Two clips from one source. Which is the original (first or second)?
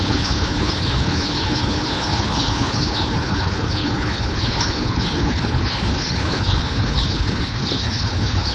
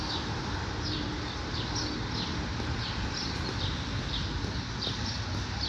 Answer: second